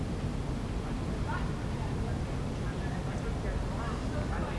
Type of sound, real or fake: real